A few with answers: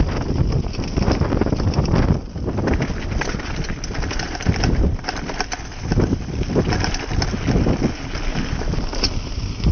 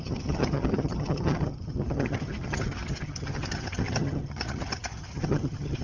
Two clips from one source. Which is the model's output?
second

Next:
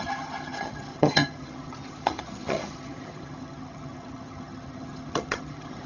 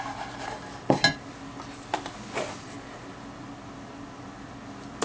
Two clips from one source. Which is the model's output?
first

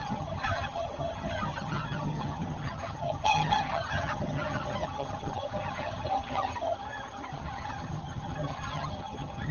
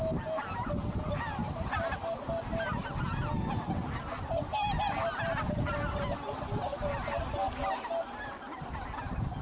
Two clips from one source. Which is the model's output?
first